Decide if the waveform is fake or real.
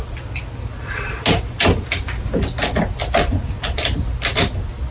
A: real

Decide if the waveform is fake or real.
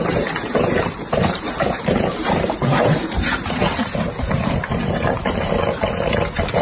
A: fake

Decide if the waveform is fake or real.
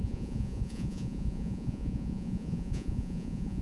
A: fake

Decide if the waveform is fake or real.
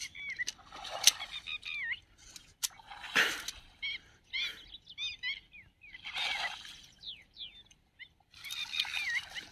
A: real